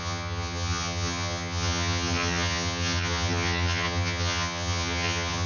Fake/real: fake